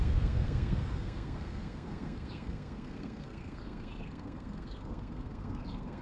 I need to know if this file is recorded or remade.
remade